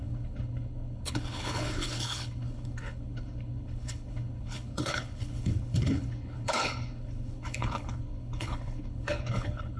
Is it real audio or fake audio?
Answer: fake